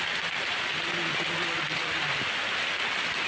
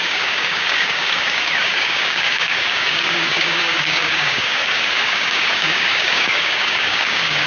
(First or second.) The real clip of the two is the first